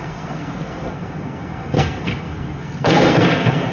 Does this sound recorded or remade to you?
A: remade